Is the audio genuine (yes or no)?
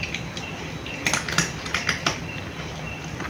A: yes